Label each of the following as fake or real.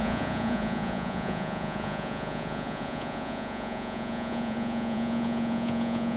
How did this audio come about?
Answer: fake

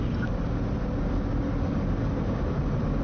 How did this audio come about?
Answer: real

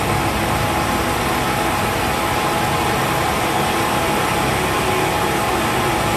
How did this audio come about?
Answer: real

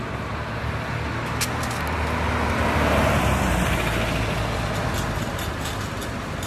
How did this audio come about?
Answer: real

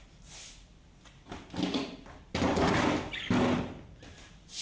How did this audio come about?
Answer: real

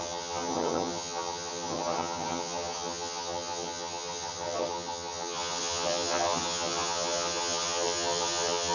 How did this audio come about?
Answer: fake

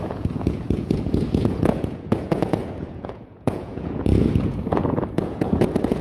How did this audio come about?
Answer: fake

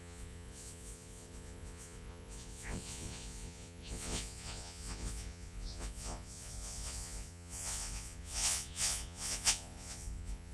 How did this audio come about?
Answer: fake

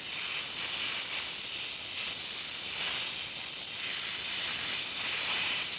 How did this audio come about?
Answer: real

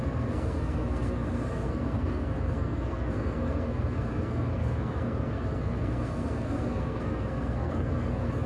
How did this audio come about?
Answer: fake